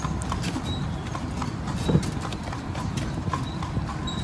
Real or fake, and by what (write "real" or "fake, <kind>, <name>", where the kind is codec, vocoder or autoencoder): fake, vocoder, BigVGAN v2